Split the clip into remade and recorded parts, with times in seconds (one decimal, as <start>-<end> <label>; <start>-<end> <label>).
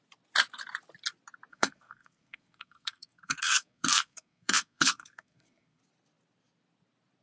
0.0-1.5 recorded; 1.5-5.8 remade; 5.8-7.2 recorded